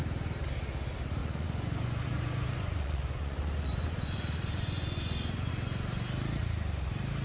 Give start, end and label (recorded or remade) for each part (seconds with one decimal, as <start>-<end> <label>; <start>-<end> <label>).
0.0-1.2 recorded; 1.2-5.5 remade; 5.5-7.2 recorded